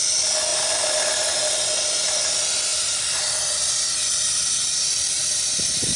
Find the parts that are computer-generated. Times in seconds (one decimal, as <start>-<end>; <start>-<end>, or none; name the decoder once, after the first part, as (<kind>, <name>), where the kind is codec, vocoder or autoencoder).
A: 0.5-1.1 (vocoder, BigVGAN v2); 2.7-3.4